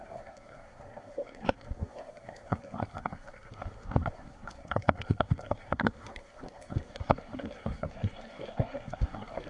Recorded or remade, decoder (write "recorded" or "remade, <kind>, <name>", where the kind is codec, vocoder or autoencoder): remade, codec, SNAC